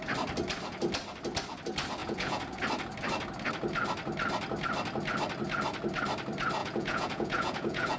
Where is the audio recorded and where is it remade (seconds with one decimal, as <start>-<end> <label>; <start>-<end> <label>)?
0.0-2.0 recorded; 2.0-2.6 remade; 2.6-6.6 recorded; 6.6-8.0 remade